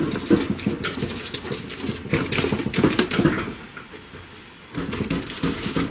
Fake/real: real